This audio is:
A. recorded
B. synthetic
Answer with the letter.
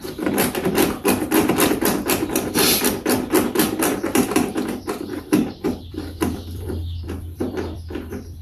B